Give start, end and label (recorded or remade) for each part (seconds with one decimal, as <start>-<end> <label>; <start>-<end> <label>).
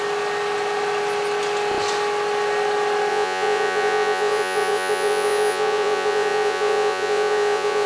0.0-3.1 recorded; 3.1-7.9 remade